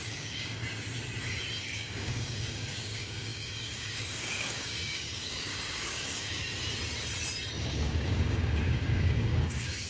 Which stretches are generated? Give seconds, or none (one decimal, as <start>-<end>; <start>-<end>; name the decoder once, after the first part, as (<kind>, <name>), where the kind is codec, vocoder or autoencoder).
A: 0.0-0.6 (codec, DAC); 1.6-6.4; 7.6-9.9